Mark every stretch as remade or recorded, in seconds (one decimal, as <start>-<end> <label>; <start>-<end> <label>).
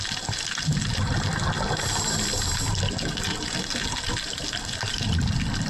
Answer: 0.0-5.7 recorded